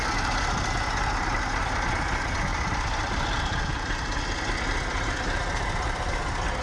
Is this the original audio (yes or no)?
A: yes